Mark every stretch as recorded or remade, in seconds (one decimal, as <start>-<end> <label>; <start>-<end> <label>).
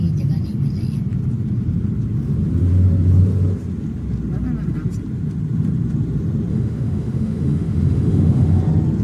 0.0-6.5 recorded; 6.5-8.6 remade; 8.6-9.0 recorded